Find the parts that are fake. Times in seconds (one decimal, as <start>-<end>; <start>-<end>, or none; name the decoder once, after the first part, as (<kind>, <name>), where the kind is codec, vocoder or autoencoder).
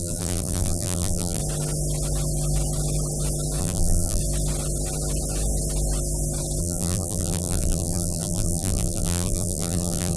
0.0-1.4 (vocoder, BigVGAN v2); 3.6-4.2; 6.6-10.2